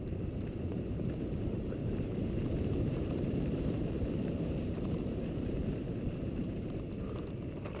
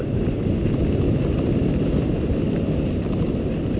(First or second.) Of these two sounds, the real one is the second